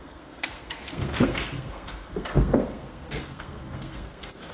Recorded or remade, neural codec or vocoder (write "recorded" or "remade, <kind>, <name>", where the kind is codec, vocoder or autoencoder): remade, codec, SNAC